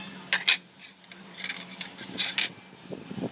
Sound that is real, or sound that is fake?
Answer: real